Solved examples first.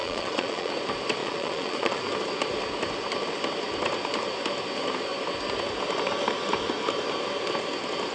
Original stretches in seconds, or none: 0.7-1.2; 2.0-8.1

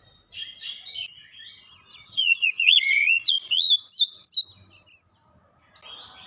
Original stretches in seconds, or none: 0.0-1.9; 3.7-6.3

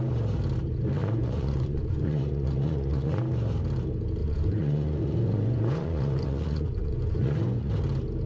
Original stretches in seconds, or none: 0.0-1.0; 3.2-4.2; 7.7-8.3

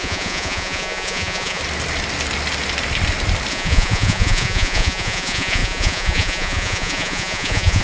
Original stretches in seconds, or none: 1.6-3.5